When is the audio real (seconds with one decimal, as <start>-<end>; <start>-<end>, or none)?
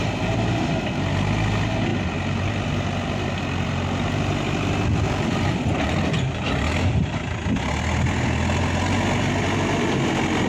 0.0-1.9; 6.1-10.5